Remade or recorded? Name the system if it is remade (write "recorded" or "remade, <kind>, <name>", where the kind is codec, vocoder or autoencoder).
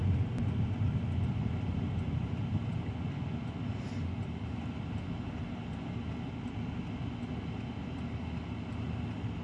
recorded